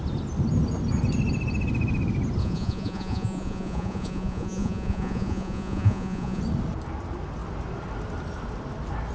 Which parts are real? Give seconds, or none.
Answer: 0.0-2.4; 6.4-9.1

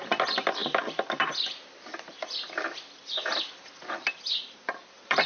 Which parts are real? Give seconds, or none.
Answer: none

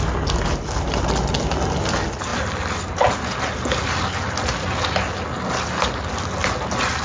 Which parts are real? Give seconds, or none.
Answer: 0.0-7.0

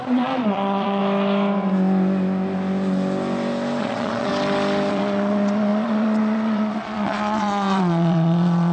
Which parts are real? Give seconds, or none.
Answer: 1.0-3.8; 4.3-4.9

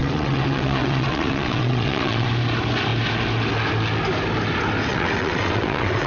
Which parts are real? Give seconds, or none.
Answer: 2.3-4.9